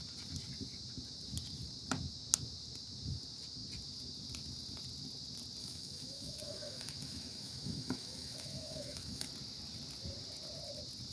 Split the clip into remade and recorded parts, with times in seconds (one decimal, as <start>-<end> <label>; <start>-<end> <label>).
0.0-5.6 recorded; 5.6-9.3 remade; 9.3-11.1 recorded